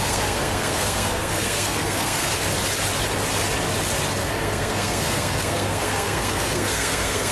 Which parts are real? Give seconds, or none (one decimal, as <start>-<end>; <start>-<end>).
2.3-4.2